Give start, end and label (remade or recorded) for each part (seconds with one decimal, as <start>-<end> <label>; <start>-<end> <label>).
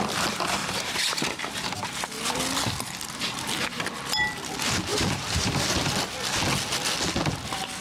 0.0-0.6 recorded; 0.6-2.0 remade; 2.0-4.9 recorded; 4.9-5.6 remade; 5.6-7.8 recorded